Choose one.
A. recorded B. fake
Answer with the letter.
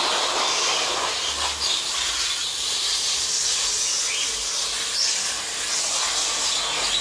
A